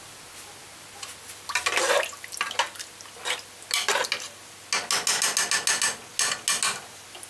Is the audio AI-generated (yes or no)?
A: no